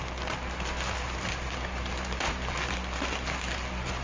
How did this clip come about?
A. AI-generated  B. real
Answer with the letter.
B